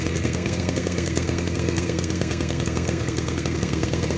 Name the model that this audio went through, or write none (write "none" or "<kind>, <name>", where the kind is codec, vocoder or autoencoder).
codec, SNAC